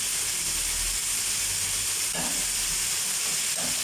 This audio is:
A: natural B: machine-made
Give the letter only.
A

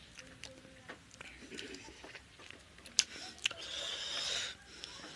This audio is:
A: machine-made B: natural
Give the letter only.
B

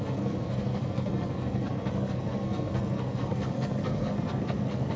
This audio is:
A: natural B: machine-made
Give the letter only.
B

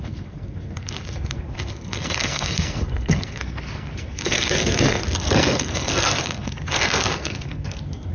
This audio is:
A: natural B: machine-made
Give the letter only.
B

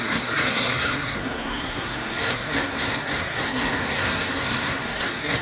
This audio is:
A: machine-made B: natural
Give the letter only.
A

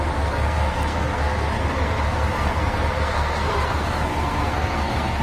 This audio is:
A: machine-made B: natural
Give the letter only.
A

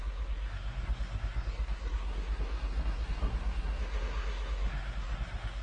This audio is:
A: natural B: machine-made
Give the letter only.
B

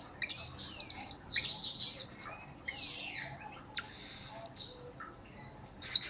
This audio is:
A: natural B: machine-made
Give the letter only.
A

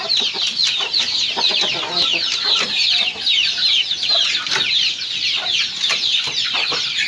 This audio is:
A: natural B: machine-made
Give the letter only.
A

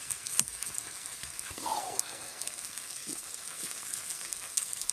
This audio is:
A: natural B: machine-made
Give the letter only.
B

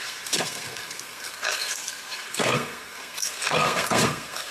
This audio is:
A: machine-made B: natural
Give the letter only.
A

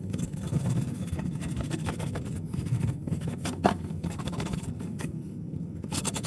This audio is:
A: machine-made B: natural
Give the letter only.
A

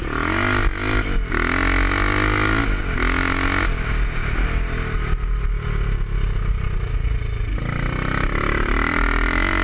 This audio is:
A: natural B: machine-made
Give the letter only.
A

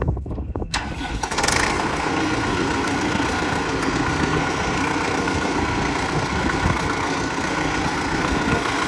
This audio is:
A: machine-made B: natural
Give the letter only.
A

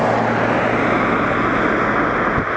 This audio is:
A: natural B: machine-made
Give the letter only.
A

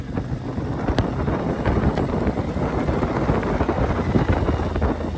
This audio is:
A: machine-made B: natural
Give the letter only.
B